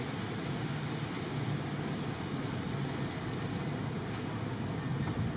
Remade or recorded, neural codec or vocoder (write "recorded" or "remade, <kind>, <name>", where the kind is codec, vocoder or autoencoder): recorded